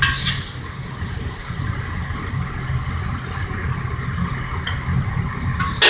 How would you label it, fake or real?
real